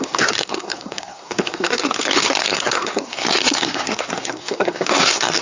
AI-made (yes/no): yes